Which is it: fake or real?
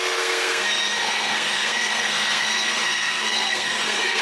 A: fake